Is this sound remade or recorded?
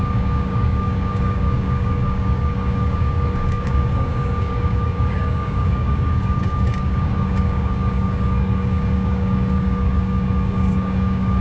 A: remade